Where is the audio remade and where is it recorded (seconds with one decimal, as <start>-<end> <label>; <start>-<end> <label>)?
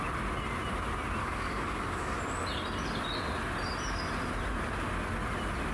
0.0-1.2 recorded; 1.2-2.2 remade; 2.2-5.7 recorded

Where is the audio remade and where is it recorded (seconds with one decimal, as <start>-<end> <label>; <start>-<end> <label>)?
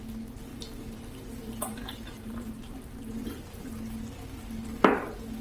0.0-0.5 recorded; 0.5-3.7 remade; 3.7-5.4 recorded